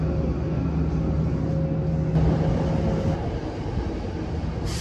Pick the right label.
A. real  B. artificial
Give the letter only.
A